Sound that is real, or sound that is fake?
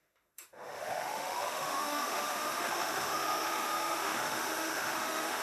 fake